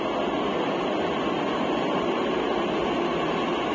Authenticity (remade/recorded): recorded